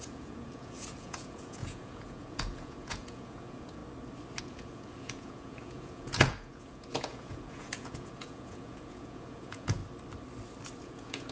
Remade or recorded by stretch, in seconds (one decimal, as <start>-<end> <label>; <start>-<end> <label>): 0.0-3.8 remade; 3.8-4.4 recorded; 4.4-9.8 remade; 9.8-10.8 recorded; 10.8-11.3 remade